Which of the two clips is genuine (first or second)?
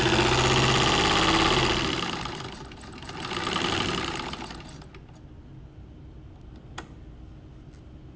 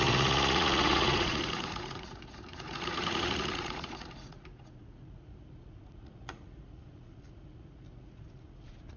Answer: first